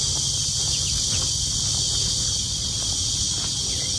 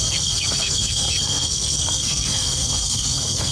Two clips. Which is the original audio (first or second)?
first